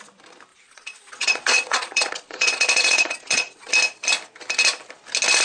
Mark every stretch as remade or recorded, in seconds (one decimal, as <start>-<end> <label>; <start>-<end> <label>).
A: 0.0-0.5 recorded; 0.5-3.7 remade; 3.7-5.4 recorded